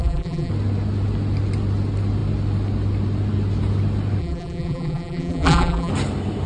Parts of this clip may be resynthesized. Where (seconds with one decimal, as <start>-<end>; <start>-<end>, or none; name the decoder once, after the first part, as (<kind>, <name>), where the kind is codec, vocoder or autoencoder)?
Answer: 0.0-0.5 (vocoder, BigVGAN v2); 4.2-5.9